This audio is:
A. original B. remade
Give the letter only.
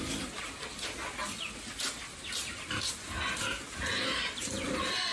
A